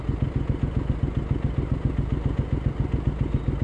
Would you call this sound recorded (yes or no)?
yes